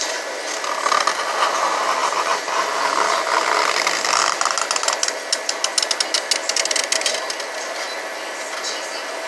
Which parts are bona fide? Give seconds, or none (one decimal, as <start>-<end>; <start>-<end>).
0.0-9.3